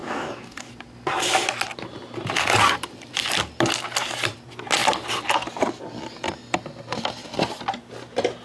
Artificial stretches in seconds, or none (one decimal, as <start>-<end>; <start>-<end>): 0.0-0.7